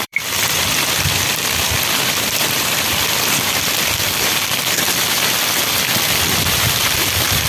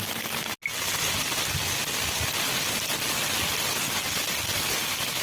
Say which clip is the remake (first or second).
first